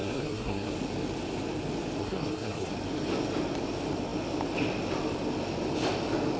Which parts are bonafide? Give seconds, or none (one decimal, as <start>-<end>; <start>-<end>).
0.7-2.0; 2.7-6.4